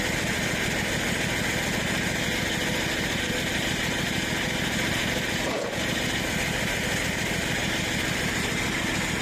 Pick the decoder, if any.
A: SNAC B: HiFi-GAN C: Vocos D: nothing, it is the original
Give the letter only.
D